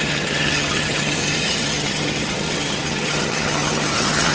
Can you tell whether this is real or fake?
fake